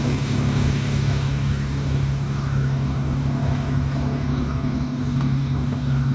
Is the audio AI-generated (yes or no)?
yes